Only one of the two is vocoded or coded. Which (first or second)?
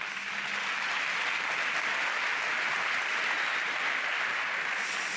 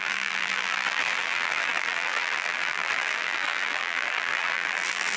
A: second